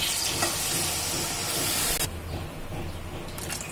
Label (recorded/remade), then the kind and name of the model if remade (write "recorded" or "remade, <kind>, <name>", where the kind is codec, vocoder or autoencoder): recorded